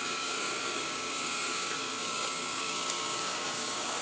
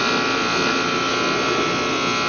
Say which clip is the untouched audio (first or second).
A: second